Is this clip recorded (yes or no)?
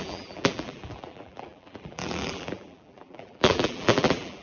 no